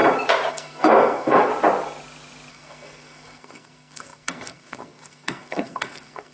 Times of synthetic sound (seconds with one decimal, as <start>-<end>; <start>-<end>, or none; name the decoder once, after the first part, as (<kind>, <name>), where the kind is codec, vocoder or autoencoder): 0.5-1.5 (codec, SNAC); 2.5-6.3